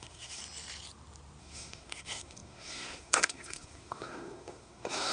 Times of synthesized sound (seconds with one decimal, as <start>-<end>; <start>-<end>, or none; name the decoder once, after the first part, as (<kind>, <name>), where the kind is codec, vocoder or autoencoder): 0.0-0.4 (codec, SNAC); 1.4-5.1